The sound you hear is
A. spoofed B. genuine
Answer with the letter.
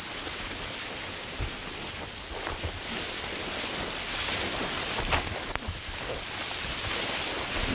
B